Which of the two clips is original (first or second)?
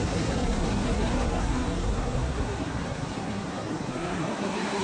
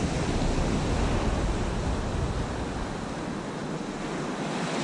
second